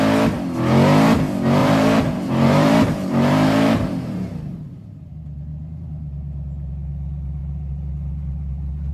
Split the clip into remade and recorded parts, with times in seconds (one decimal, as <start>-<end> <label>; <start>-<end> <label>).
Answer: 0.0-1.6 recorded; 1.6-5.0 remade; 5.0-8.9 recorded